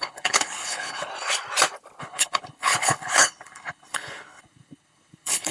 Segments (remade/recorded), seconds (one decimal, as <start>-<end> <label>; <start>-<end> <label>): 0.0-1.1 remade; 1.1-2.0 recorded; 2.0-5.5 remade